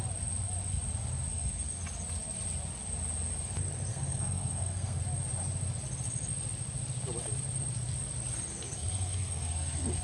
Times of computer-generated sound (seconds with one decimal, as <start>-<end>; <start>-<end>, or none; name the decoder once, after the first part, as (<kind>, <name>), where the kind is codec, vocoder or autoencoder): 1.3-1.8 (codec, SNAC); 3.9-5.0; 8.5-10.0